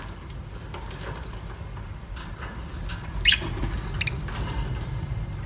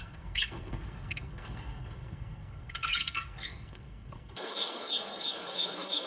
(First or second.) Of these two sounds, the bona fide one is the first